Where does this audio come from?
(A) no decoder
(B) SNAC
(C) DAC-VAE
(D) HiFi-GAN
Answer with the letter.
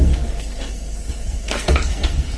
B